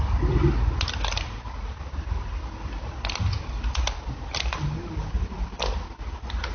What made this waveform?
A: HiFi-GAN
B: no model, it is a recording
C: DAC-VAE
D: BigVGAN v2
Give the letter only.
B